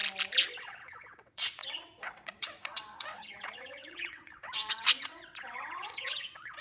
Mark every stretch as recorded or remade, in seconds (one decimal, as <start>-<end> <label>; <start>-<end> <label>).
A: 0.0-0.6 recorded; 0.6-6.6 remade